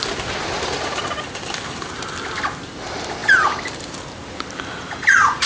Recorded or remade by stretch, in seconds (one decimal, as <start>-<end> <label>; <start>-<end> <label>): 0.0-5.5 recorded